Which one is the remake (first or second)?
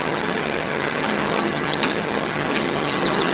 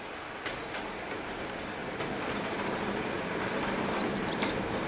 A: first